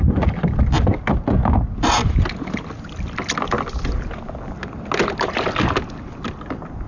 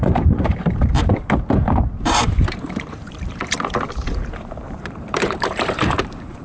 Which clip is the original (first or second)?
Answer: first